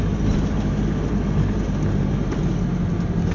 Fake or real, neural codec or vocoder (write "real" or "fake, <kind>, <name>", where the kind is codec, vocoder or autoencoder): real